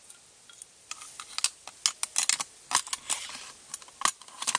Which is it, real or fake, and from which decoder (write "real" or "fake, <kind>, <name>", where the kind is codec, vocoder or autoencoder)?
real